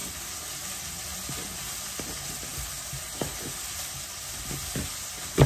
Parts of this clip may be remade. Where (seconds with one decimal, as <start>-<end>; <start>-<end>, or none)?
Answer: none